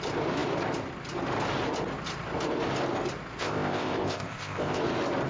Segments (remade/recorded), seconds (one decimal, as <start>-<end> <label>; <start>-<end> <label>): 0.0-3.4 recorded; 3.4-4.8 remade; 4.8-5.3 recorded